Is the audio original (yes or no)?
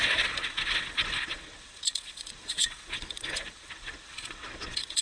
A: no